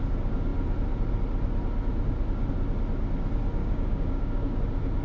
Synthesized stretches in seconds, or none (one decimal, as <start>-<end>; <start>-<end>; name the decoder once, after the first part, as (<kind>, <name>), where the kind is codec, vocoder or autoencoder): 3.6-4.6 (codec, DAC)